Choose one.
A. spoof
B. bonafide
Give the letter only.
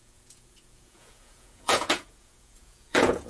A